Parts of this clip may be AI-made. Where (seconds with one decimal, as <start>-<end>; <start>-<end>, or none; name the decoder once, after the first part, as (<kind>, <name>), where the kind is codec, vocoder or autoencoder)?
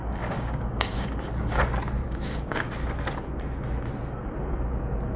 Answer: 0.0-1.6 (codec, DAC); 2.0-2.7